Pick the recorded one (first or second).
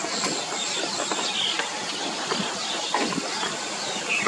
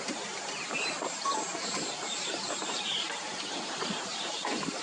first